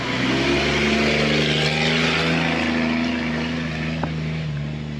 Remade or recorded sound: recorded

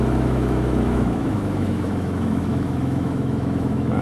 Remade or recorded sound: remade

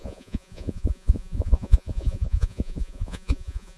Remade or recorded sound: remade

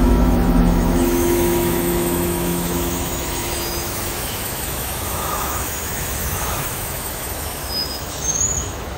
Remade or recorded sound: remade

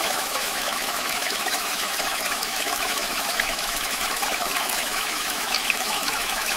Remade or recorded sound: remade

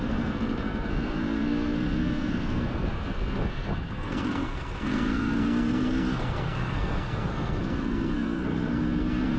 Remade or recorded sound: remade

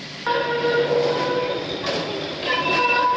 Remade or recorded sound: recorded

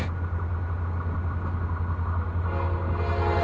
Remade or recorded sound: recorded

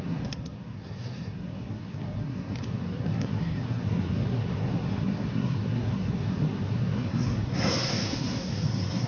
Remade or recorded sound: remade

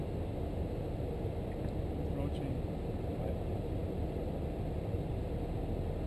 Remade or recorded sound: recorded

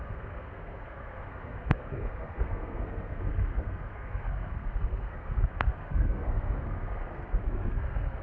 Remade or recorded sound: remade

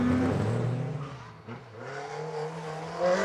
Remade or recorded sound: recorded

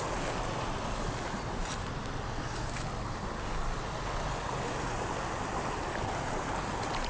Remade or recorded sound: recorded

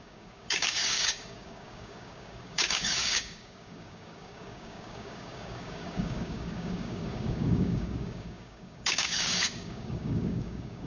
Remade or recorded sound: remade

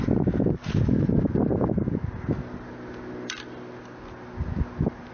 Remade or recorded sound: recorded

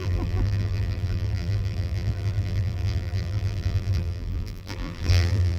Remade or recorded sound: remade